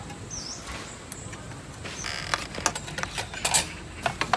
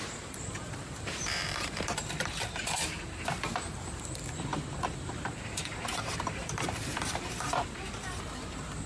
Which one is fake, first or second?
second